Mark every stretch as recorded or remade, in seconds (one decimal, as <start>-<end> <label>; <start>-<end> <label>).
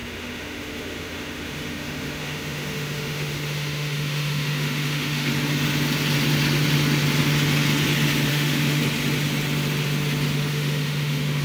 0.0-5.3 remade; 5.3-8.3 recorded; 8.3-8.8 remade; 8.8-10.5 recorded; 10.5-11.4 remade